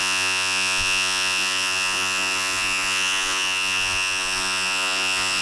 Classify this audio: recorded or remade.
remade